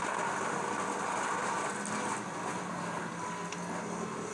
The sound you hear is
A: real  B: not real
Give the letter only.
A